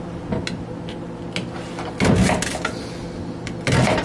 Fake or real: real